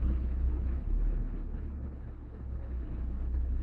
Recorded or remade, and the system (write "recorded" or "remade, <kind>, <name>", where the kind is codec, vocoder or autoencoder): remade, codec, HILCodec